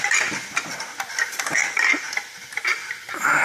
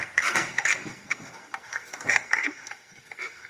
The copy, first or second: second